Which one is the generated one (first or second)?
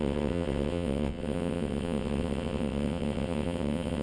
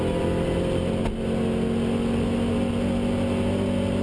first